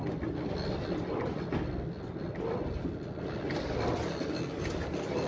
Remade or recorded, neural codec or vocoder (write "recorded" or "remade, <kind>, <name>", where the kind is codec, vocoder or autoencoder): recorded